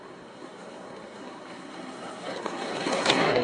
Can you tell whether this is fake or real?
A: fake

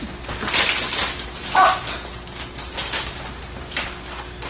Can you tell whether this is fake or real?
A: real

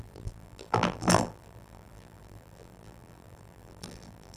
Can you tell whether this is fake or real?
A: fake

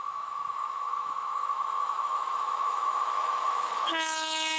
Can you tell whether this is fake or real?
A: fake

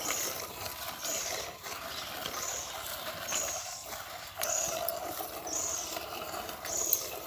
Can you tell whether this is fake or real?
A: fake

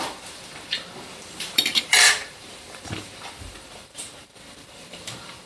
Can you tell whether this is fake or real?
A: fake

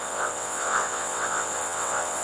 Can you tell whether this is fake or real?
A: fake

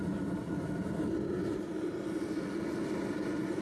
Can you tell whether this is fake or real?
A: real